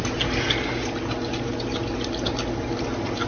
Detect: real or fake real